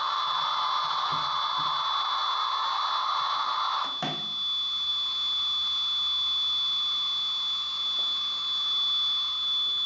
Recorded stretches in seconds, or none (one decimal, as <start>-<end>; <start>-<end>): 0.0-9.9